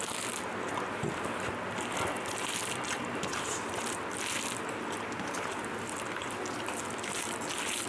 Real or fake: real